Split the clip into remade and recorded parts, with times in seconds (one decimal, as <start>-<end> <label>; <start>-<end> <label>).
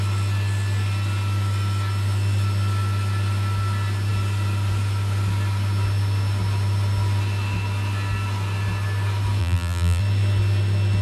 0.0-9.4 recorded; 9.4-10.0 remade; 10.0-11.0 recorded